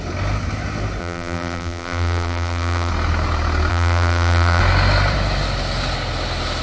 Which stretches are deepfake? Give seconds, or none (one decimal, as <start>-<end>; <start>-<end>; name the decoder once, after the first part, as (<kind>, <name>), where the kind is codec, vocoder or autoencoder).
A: 1.0-2.9 (vocoder, BigVGAN v2); 3.7-4.6